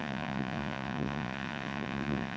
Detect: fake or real fake